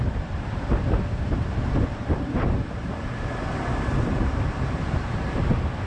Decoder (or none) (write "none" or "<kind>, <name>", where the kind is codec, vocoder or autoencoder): none